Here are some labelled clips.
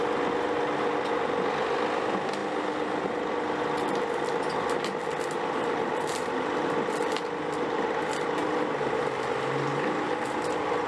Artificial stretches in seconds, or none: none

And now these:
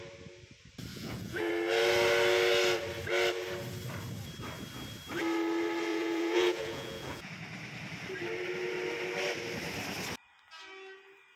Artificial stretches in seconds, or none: 0.9-1.5 (vocoder, Vocos); 5.9-7.3

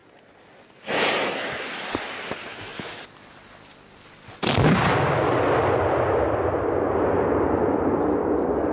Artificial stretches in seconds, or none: none

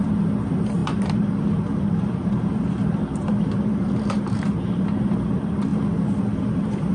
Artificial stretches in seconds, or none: 0.0-5.7 (vocoder, BigVGAN v2); 6.4-6.9

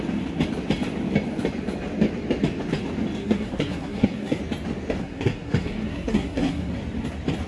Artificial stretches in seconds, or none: 3.2-4.4 (codec, SNAC); 5.0-6.7

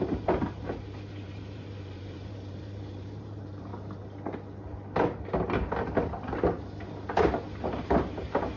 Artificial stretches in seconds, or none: 0.0-3.7 (vocoder, BigVGAN v2); 8.0-8.6